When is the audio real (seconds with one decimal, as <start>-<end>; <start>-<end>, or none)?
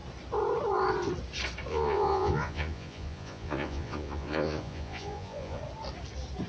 0.0-1.7; 5.6-6.5